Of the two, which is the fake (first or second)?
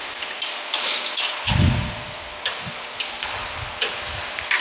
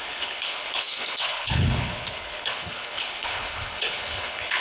second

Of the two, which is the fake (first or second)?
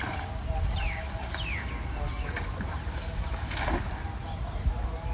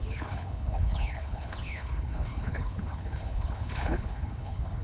second